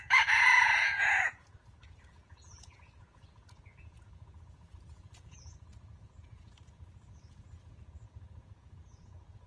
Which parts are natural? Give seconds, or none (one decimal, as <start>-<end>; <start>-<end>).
none